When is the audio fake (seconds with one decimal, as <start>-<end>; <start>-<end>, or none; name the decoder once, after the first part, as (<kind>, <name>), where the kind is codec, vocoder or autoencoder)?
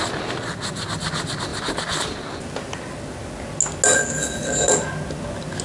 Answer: none